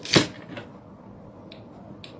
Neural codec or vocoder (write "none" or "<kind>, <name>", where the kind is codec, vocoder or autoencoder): none